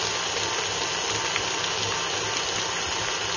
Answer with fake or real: real